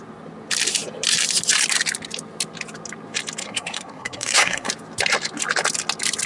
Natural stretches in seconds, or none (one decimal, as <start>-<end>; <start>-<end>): 0.0-3.4; 4.7-6.3